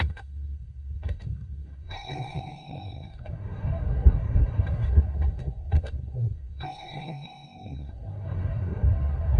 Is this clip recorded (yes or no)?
no